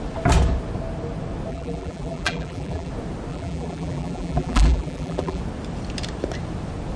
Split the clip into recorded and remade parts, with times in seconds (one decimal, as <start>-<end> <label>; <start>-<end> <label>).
0.0-1.5 recorded; 1.5-2.9 remade; 2.9-3.3 recorded; 3.3-5.4 remade; 5.4-7.0 recorded